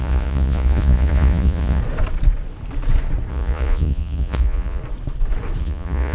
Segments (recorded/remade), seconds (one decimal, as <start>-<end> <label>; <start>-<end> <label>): 0.0-1.8 remade; 1.8-3.3 recorded; 3.3-4.8 remade; 4.8-5.6 recorded; 5.6-6.1 remade